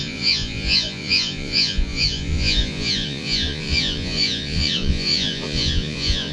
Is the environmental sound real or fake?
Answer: fake